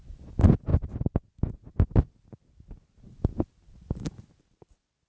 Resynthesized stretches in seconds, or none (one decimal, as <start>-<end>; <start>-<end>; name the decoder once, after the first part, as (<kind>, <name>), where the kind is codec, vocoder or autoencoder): none